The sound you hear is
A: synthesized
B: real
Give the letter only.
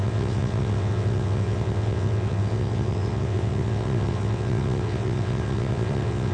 A